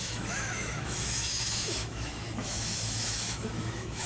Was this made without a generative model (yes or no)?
no